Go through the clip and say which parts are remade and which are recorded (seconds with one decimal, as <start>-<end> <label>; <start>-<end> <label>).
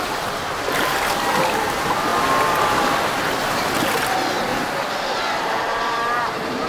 0.0-2.1 remade; 2.1-4.1 recorded; 4.1-4.5 remade; 4.5-5.4 recorded; 5.4-6.7 remade